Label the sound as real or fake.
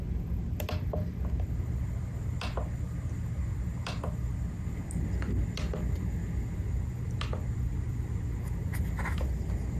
real